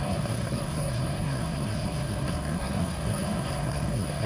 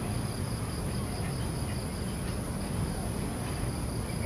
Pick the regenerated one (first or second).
first